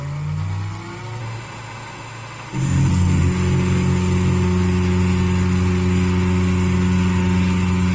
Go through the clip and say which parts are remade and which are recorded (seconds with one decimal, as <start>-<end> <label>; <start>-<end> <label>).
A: 0.0-1.2 recorded; 1.2-2.8 remade; 2.8-7.9 recorded